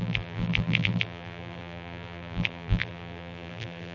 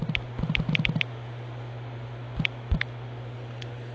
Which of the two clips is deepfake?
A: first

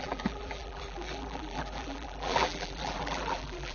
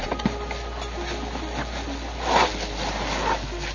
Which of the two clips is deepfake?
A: first